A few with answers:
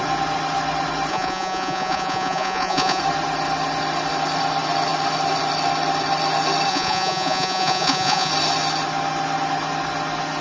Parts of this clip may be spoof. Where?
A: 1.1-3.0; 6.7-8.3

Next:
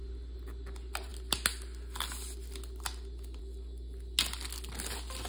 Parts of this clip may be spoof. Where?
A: none

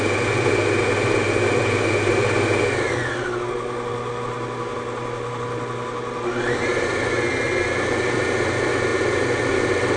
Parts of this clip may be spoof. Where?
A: none

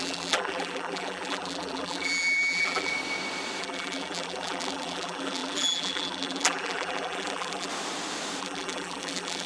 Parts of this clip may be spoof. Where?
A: 0.0-2.9; 3.6-7.7; 8.4-9.5

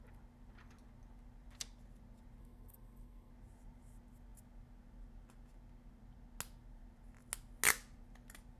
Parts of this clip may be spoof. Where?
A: 2.4-3.3

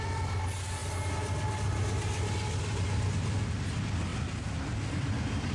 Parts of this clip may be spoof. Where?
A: none

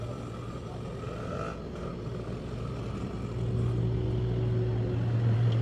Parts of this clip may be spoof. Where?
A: none

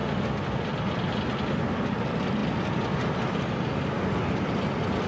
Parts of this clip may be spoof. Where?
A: none